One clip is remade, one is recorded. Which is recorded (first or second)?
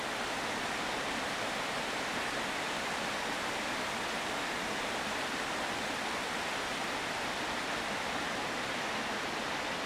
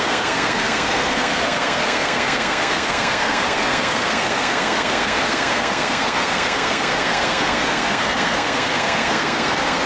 first